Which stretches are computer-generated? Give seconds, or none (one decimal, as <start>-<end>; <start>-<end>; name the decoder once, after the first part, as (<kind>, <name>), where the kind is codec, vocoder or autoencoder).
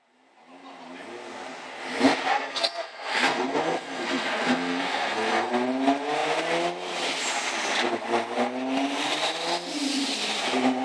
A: 2.3-5.5 (codec, SNAC)